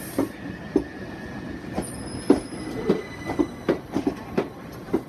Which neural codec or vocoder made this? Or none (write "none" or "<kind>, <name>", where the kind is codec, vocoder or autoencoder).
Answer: none